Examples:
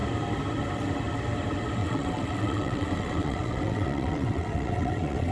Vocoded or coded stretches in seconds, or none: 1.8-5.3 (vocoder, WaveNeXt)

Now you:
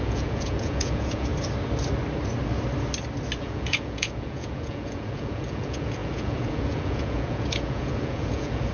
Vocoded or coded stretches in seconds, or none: 0.0-1.3 (vocoder, Vocos); 3.4-8.7